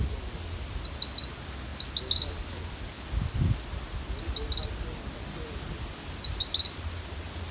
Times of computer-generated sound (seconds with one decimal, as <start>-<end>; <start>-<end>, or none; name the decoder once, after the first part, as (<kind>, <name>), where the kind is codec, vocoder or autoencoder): none